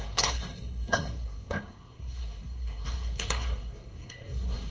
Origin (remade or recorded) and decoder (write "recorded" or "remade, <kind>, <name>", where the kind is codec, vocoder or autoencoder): remade, codec, SNAC